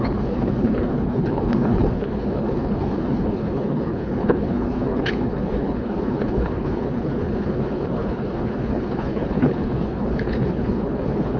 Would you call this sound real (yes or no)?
no